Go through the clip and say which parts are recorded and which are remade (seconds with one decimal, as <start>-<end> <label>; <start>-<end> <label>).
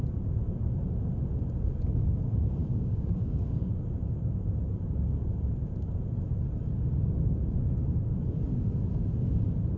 0.0-2.6 recorded; 2.6-3.7 remade; 3.7-9.8 recorded